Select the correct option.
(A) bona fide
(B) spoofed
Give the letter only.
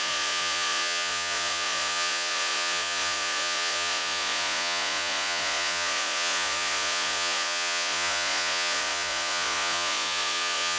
B